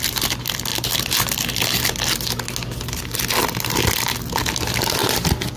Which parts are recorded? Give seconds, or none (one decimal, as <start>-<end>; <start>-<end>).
0.0-5.6